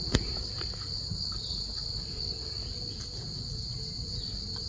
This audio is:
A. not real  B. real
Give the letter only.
B